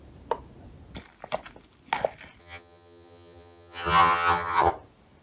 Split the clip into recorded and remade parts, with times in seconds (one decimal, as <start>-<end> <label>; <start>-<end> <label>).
0.0-2.4 recorded; 2.4-4.7 remade; 4.7-5.2 recorded